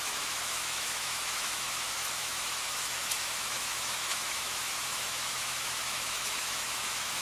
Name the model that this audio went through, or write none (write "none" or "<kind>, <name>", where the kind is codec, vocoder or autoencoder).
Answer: autoencoder, DAC-VAE